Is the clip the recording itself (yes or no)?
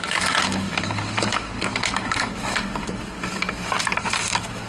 no